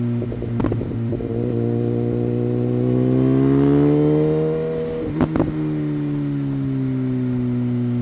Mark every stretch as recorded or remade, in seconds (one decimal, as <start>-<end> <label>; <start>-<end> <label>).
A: 0.0-0.6 recorded; 0.6-1.2 remade; 1.2-8.0 recorded